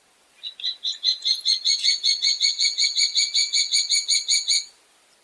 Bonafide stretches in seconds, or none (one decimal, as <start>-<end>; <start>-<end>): 0.0-5.2